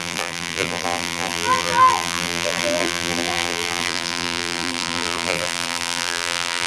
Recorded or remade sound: remade